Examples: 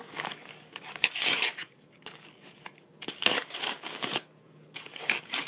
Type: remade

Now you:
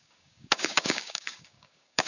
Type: remade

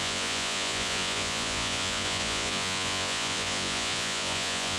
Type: remade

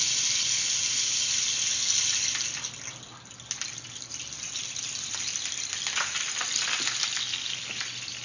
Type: recorded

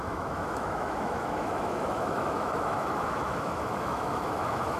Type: remade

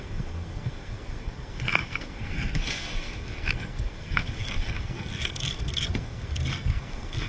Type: remade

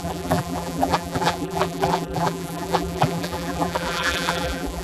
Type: remade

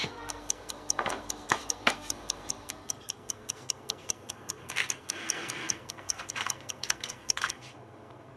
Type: remade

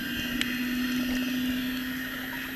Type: recorded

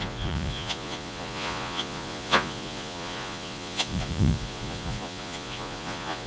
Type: remade